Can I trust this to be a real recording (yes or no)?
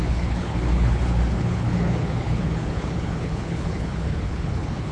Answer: no